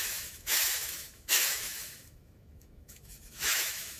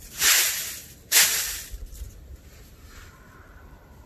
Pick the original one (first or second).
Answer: second